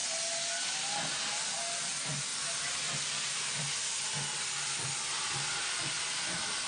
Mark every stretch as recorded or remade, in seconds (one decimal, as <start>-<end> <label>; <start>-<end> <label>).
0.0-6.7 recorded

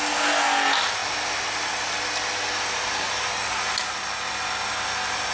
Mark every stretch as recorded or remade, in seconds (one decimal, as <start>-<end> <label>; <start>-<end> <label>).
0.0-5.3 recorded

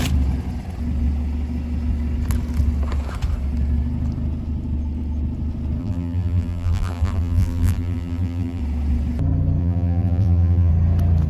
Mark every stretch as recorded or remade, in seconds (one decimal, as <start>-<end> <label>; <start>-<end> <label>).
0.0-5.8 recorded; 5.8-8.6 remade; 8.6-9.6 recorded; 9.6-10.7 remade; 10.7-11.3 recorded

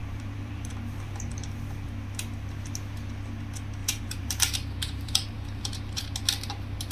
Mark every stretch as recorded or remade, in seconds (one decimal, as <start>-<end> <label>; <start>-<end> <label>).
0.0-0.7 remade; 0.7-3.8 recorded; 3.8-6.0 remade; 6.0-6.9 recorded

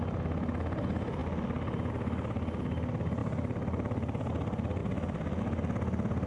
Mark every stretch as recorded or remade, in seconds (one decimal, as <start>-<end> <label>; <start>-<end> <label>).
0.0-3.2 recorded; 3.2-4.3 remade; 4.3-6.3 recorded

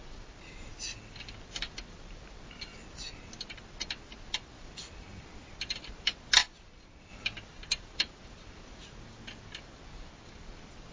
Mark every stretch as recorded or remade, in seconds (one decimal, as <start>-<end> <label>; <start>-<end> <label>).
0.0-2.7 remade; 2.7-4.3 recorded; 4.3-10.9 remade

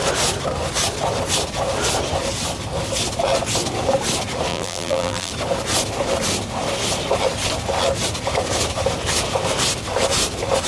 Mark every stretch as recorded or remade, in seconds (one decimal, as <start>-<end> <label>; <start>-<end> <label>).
0.0-4.5 recorded; 4.5-5.3 remade; 5.3-10.7 recorded

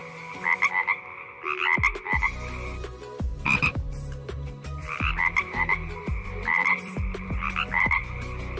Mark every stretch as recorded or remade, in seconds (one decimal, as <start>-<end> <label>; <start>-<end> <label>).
0.0-3.3 recorded; 3.3-8.6 remade